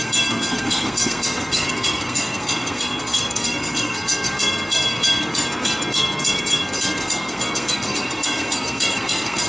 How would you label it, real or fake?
fake